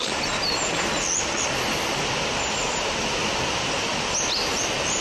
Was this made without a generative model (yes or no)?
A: yes